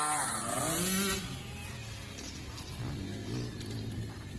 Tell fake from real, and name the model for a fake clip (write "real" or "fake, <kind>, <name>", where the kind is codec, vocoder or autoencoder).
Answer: real